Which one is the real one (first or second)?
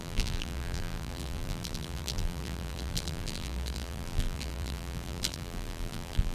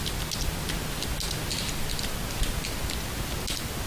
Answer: second